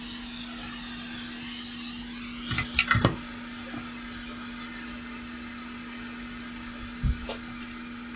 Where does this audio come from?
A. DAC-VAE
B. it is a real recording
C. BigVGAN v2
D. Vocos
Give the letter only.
B